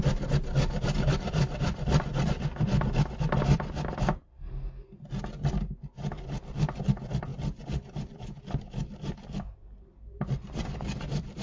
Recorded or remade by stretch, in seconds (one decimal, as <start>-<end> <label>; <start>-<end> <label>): 0.0-11.4 recorded